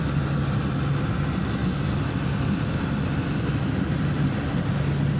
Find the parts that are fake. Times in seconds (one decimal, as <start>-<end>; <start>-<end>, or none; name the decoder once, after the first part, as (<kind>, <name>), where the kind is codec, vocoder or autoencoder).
1.6-4.7 (vocoder, BigVGAN v2)